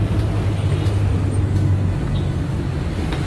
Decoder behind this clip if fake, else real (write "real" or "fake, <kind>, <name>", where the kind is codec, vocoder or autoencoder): real